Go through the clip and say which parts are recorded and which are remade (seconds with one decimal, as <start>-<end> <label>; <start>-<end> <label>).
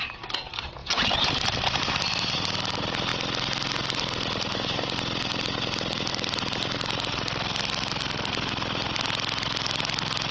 0.0-0.8 recorded; 0.8-1.3 remade; 1.3-10.3 recorded